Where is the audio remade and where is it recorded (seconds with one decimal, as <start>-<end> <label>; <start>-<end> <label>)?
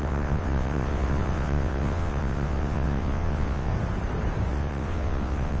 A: 0.0-3.7 remade; 3.7-4.5 recorded; 4.5-5.6 remade